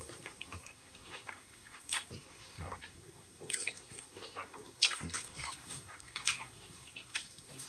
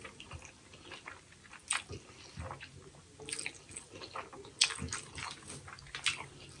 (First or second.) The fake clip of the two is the first